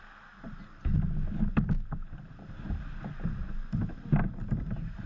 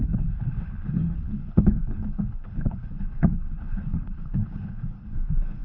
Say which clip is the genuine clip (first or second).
first